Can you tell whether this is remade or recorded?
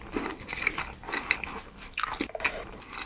recorded